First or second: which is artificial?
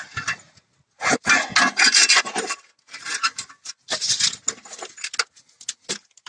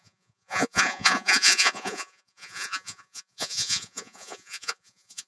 second